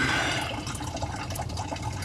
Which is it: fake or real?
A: real